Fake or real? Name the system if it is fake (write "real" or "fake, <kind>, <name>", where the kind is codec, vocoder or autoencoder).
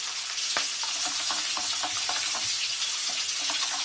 real